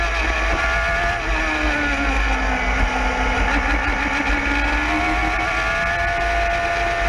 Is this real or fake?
real